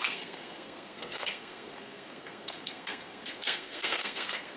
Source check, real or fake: fake